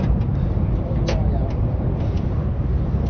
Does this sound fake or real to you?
real